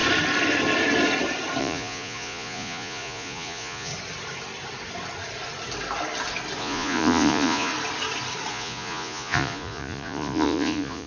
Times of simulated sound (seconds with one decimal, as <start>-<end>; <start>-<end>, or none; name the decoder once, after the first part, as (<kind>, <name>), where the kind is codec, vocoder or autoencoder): 1.6-3.9 (vocoder, Vocos); 6.6-7.7; 8.5-11.1

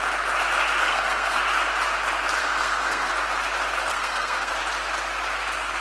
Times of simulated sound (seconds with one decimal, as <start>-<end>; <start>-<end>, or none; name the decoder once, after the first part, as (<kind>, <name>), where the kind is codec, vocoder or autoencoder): 0.8-1.4 (codec, SNAC); 2.4-3.1; 3.9-4.5

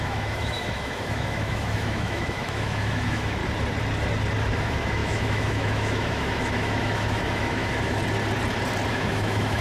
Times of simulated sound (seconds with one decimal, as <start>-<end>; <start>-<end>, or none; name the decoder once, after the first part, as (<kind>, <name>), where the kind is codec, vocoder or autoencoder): 0.0-3.4 (autoencoder, DAC-VAE); 4.6-8.0; 8.9-9.6

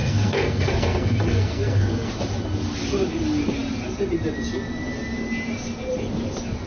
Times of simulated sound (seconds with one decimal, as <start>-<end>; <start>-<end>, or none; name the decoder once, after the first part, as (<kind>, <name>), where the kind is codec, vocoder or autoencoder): 0.0-2.1 (codec, SNAC)